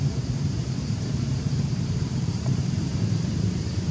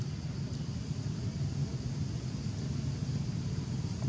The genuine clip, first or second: second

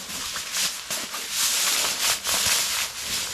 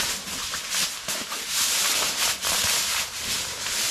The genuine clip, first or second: first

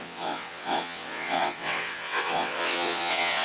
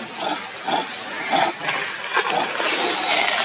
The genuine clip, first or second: second